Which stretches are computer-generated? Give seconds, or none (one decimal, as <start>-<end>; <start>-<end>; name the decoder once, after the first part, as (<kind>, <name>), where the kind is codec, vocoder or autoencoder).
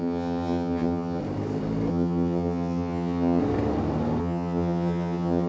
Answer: 0.0-1.2 (vocoder, HiFi-GAN); 1.9-3.4; 4.2-5.5